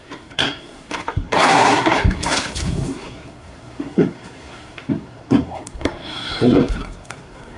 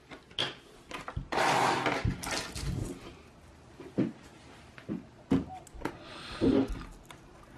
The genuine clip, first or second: second